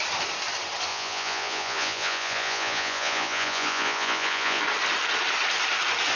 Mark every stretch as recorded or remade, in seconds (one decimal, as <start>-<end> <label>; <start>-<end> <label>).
0.0-0.9 recorded; 0.9-4.6 remade; 4.6-6.2 recorded